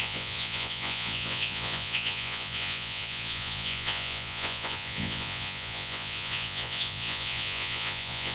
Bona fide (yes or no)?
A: no